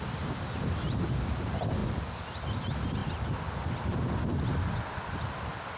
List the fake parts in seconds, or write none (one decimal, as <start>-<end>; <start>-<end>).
1.8-2.6; 3.0-4.2